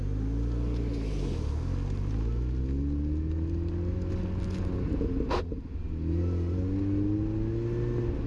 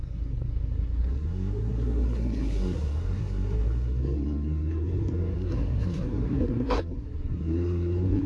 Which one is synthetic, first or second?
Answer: second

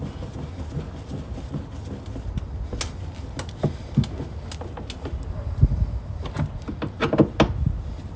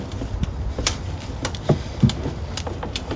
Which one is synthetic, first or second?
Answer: second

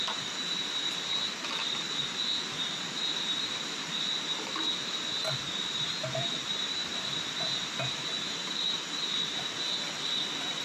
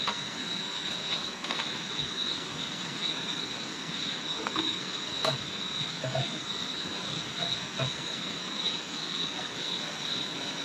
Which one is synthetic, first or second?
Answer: second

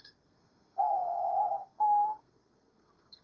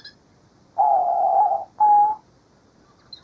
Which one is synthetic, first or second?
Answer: first